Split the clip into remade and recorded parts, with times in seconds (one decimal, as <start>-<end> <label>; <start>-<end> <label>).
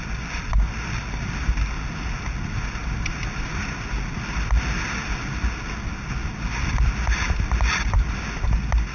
0.0-8.9 recorded